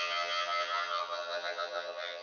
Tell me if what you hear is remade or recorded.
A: remade